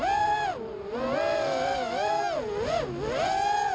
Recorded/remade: recorded